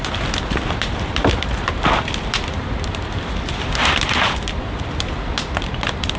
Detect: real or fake fake